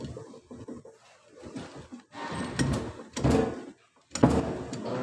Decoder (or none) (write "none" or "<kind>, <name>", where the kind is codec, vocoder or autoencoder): none